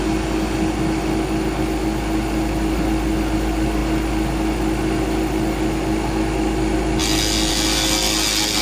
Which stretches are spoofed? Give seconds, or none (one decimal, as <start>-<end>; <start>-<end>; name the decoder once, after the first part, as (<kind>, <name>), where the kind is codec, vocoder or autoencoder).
none

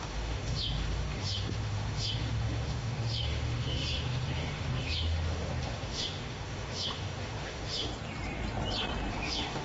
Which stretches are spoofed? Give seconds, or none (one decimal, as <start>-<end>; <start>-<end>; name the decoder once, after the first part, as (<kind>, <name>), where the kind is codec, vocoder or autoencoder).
0.0-7.9 (autoencoder, DAC-VAE); 9.1-9.6